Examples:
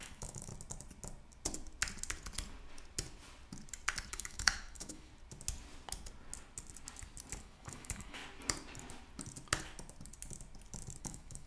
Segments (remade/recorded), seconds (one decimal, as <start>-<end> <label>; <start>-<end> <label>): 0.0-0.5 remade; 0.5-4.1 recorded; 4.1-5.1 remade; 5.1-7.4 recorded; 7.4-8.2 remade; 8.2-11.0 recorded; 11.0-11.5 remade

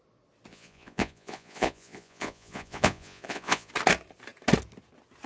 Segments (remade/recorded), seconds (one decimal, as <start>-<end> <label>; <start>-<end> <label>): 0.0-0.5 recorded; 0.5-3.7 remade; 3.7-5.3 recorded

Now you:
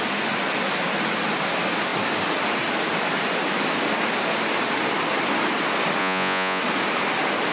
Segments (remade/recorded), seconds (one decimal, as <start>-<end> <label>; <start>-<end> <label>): 0.0-6.0 recorded; 6.0-6.6 remade; 6.6-7.5 recorded